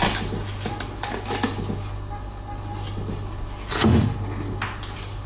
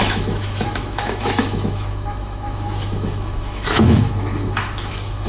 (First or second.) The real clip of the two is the first